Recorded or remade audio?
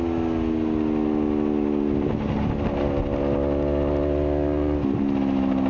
recorded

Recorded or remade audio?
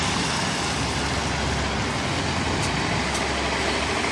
recorded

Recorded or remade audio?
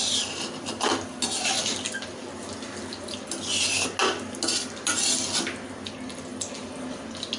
recorded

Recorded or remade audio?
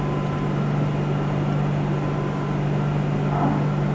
recorded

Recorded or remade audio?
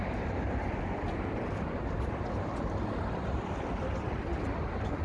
recorded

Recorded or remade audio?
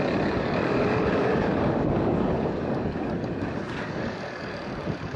remade